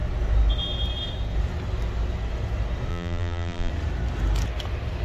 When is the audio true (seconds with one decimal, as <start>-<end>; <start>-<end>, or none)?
0.0-2.9; 3.7-5.0

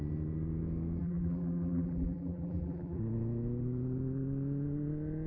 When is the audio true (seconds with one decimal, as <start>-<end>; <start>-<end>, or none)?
0.0-1.0; 3.0-5.3

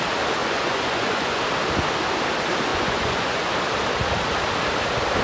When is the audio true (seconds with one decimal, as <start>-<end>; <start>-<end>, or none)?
0.0-0.4; 1.4-2.7; 3.5-5.2